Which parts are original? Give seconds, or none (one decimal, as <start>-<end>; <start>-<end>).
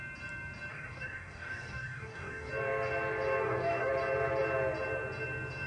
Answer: 0.0-0.7; 2.5-3.4; 3.9-5.7